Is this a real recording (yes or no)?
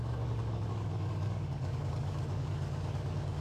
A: no